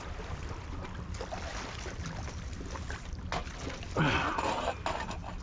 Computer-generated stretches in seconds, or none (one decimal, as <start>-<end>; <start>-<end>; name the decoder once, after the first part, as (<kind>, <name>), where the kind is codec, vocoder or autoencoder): none